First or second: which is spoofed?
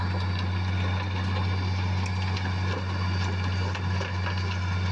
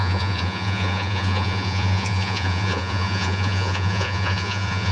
second